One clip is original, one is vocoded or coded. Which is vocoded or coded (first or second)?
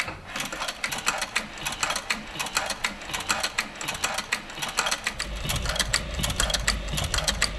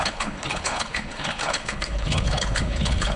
second